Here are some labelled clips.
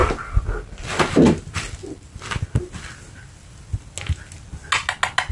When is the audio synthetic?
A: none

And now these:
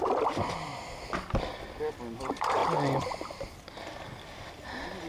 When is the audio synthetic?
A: 0.0-0.7 (vocoder, BigVGAN v2); 2.2-2.6